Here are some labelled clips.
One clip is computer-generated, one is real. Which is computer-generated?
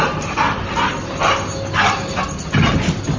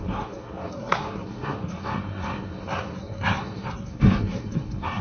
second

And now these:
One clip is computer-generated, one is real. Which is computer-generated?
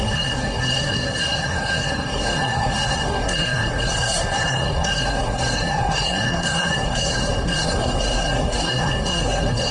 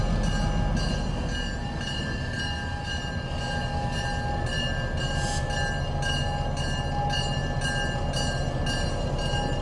first